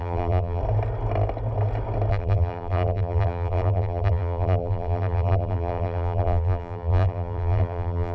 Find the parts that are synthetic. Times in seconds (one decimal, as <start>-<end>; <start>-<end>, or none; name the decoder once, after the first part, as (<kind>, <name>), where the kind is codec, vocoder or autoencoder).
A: 0.0-0.6 (vocoder, BigVGAN v2); 2.1-8.1